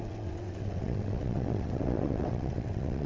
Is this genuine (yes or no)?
no